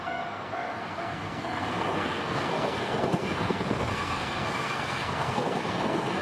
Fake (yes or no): yes